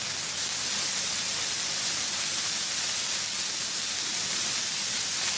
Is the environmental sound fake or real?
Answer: real